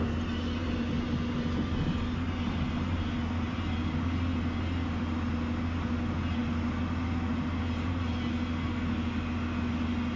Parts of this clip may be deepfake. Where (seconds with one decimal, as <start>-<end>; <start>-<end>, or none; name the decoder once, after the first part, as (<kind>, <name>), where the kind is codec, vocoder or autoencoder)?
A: none